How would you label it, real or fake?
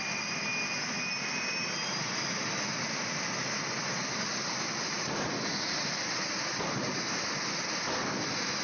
real